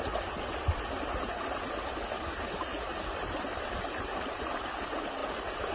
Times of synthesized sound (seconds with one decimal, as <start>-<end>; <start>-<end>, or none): none